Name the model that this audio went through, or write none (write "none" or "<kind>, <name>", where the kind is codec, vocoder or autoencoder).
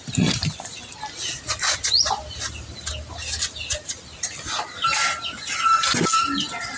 none